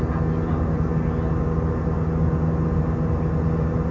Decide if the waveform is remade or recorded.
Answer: recorded